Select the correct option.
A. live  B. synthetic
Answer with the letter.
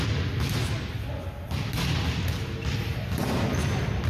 A